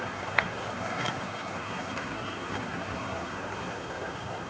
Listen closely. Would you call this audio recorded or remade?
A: remade